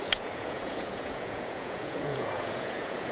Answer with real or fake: fake